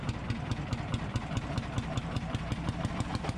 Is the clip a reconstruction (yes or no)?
no